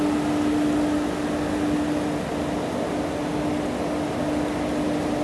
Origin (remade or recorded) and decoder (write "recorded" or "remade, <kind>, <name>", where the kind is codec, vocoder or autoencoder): recorded